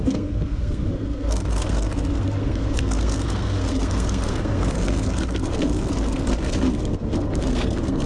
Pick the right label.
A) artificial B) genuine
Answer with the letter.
A